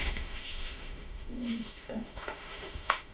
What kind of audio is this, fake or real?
fake